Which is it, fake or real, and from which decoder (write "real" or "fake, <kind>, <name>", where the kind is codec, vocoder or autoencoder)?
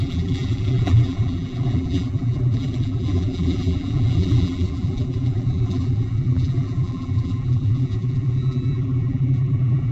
fake, vocoder, BigVGAN v2